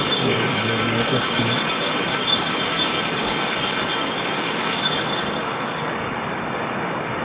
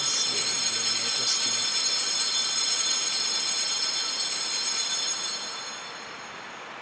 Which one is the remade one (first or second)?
first